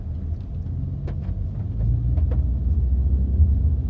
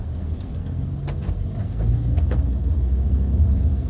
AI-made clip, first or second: second